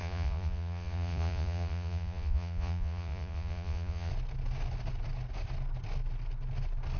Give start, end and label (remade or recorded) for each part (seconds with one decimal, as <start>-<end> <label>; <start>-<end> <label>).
0.0-4.1 remade; 4.1-7.0 recorded